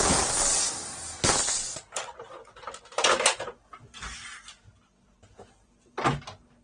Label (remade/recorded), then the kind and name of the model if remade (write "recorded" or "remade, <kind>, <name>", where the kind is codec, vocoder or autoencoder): recorded